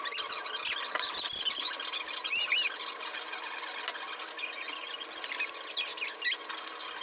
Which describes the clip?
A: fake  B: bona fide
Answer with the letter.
B